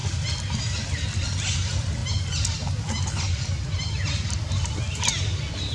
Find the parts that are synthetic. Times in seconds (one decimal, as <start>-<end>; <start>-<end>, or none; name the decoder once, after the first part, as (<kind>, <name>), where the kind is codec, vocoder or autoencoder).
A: none